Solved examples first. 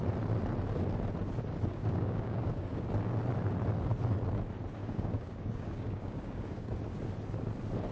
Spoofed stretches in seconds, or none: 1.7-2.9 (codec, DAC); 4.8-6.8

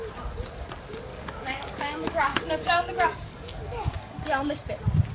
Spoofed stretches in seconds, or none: 1.1-4.2 (codec, DAC)

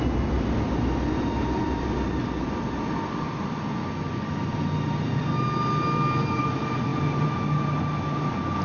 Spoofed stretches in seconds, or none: none

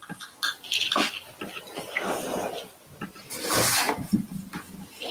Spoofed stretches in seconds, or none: none

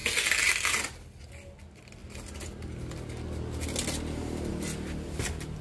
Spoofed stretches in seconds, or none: none